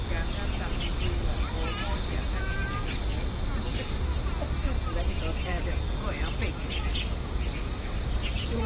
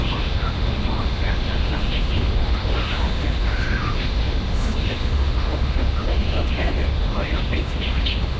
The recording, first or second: first